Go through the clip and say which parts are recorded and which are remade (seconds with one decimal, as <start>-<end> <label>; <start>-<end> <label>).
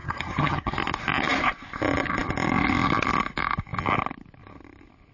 0.0-0.7 remade; 0.7-5.1 recorded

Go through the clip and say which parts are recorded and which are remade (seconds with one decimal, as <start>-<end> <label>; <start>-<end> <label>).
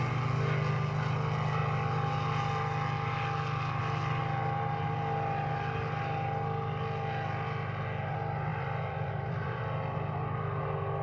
0.0-8.5 recorded; 8.5-9.6 remade; 9.6-11.0 recorded